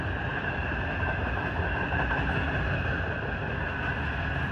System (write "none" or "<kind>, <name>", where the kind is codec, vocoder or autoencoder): none